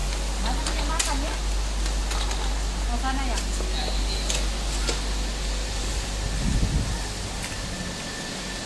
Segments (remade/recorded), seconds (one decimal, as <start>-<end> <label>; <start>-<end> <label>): 0.0-8.7 recorded